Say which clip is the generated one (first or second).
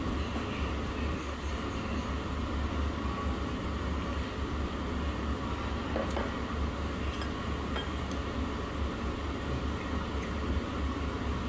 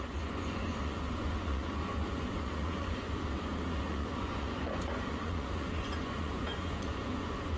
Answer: second